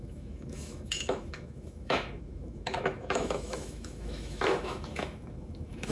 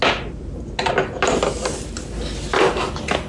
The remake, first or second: first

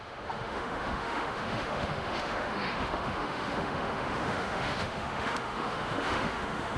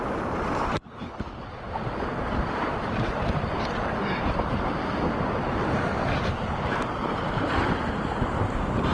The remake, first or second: first